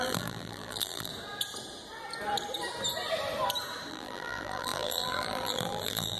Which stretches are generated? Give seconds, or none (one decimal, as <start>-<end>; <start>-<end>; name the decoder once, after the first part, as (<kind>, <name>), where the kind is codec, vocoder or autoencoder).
0.0-1.1 (vocoder, BigVGAN v2); 3.9-6.2